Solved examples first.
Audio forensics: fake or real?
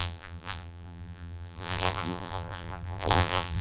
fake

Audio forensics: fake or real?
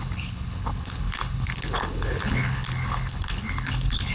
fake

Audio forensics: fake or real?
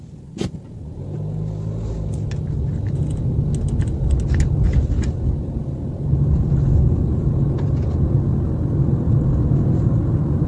real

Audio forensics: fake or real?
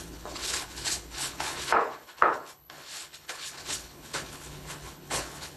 fake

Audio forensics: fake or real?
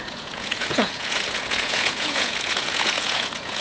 fake